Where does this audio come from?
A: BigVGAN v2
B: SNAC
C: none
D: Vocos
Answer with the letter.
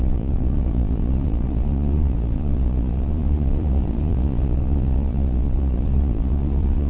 D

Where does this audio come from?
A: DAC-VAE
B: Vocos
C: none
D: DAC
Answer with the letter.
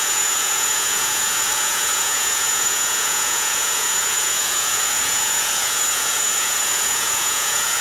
B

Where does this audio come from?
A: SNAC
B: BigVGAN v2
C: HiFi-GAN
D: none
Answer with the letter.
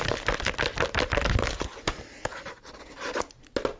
D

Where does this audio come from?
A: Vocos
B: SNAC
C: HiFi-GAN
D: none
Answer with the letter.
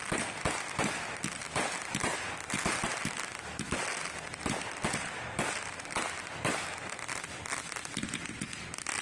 D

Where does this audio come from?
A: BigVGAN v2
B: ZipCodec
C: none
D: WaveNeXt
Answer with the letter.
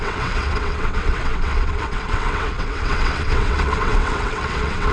D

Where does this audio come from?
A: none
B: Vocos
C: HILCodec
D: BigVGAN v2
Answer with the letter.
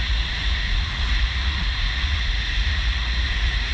B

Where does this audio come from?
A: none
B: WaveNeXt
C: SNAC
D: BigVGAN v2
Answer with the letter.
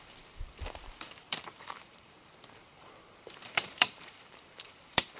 D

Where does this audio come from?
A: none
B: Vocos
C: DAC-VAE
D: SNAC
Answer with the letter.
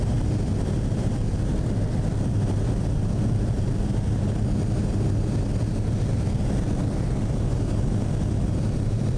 A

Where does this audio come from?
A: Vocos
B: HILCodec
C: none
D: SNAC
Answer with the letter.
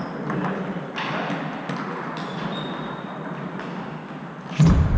C